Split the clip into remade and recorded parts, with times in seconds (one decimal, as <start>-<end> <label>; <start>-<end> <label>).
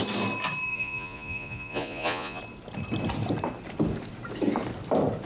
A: 0.0-0.7 recorded; 0.7-2.4 remade; 2.4-5.3 recorded